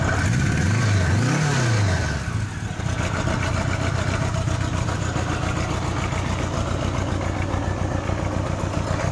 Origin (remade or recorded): recorded